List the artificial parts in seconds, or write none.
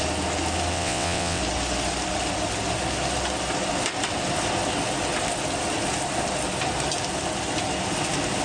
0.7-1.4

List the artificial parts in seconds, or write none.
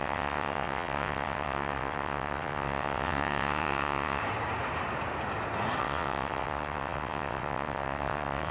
0.0-4.2; 5.8-8.5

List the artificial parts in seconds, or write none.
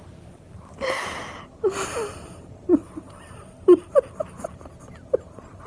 none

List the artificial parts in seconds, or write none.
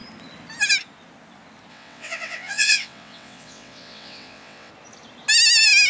1.7-4.7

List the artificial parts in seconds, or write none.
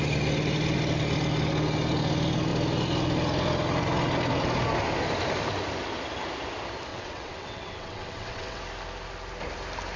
6.9-8.6